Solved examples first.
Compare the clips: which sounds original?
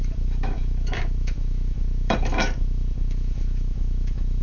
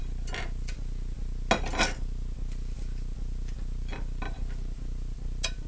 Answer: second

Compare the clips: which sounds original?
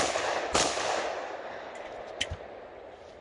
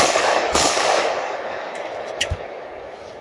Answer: first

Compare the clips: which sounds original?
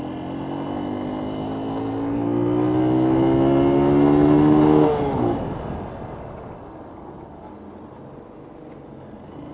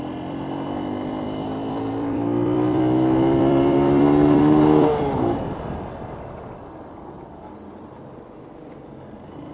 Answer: first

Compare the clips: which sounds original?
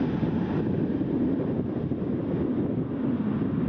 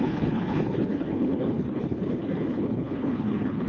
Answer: first